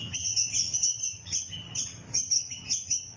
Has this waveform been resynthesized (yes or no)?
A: yes